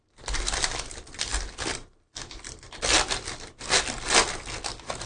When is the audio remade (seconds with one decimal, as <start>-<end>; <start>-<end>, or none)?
none